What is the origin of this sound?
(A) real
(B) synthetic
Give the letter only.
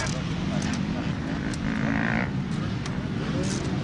A